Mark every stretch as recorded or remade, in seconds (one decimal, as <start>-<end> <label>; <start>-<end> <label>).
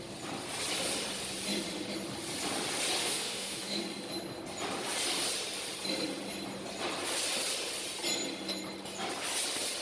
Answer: 0.0-3.0 recorded; 3.0-3.8 remade; 3.8-9.8 recorded